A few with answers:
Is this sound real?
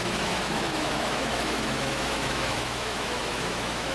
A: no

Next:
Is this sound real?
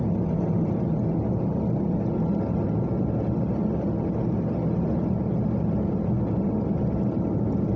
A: yes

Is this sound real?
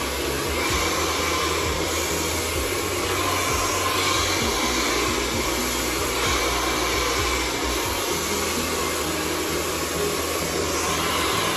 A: yes